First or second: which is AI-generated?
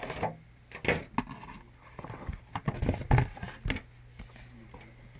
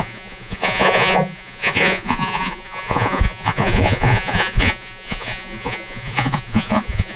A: second